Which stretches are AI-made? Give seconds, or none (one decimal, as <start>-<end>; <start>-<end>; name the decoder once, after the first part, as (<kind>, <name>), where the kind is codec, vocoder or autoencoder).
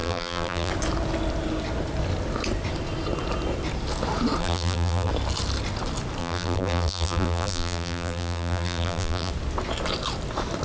0.0-0.7 (vocoder, BigVGAN v2); 4.4-5.1; 6.2-9.3